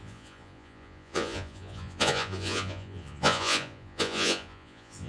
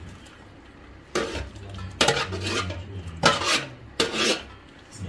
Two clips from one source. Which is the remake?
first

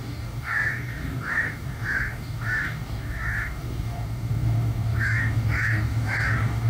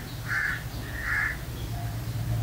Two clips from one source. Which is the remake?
first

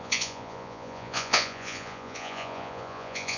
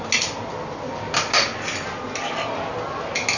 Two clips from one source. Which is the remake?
first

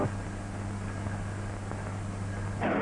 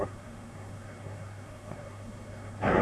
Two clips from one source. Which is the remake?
second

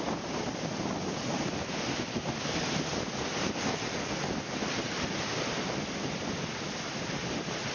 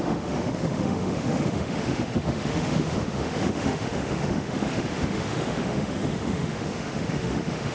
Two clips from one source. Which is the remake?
second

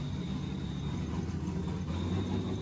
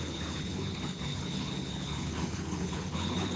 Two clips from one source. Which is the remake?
second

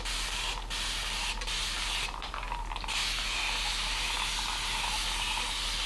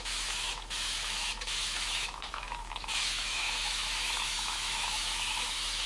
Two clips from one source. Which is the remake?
second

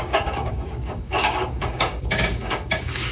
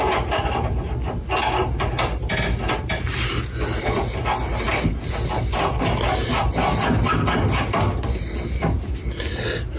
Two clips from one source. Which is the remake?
first